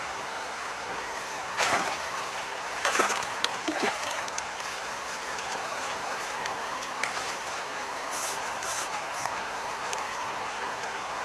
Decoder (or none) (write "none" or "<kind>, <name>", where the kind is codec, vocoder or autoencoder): codec, SNAC